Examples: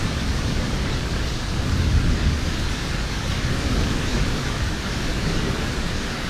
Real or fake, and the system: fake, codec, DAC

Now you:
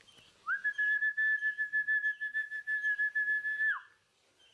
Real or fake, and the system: real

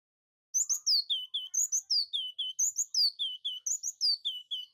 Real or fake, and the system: real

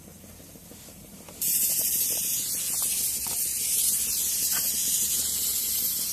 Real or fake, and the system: real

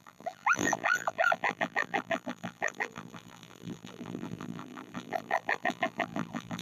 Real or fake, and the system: fake, vocoder, BigVGAN v2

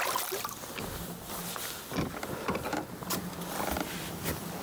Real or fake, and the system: real